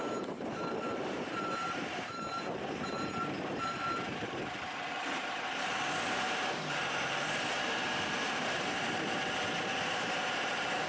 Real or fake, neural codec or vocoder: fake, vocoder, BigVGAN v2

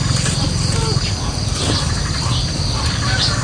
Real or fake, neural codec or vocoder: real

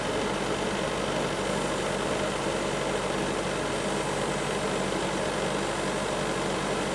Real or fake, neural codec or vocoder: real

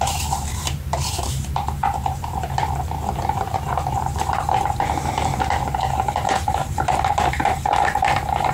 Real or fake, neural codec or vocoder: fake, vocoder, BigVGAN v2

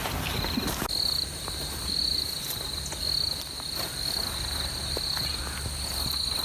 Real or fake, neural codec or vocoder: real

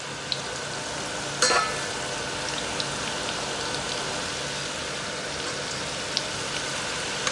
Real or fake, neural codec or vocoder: real